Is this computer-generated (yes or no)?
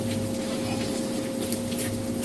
no